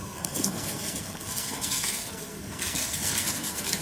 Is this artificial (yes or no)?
yes